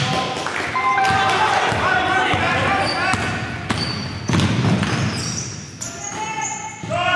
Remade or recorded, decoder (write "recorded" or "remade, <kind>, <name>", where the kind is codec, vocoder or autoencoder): recorded